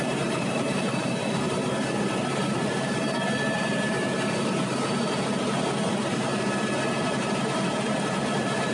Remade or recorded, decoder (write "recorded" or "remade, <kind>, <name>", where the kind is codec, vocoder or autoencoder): remade, vocoder, BigVGAN v2